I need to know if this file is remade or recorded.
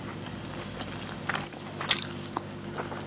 recorded